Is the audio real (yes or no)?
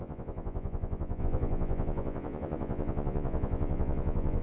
no